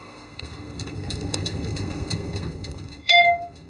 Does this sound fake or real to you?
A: fake